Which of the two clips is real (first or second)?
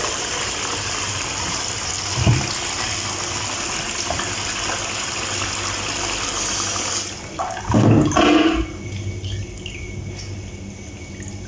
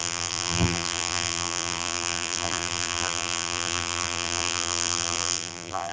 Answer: first